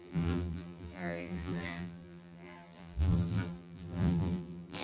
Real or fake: fake